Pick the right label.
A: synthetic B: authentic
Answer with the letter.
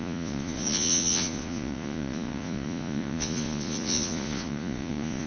A